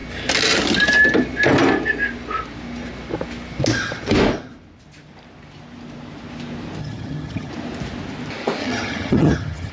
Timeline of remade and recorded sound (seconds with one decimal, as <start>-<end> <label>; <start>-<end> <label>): 0.0-6.8 recorded; 6.8-7.5 remade; 7.5-8.6 recorded; 8.6-9.7 remade